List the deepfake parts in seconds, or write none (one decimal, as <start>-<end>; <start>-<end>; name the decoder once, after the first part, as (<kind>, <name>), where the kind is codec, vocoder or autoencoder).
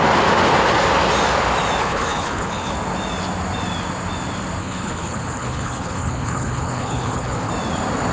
1.8-2.7 (codec, HILCodec); 4.6-7.5